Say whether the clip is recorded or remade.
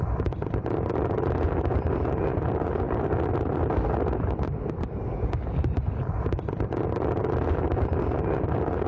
recorded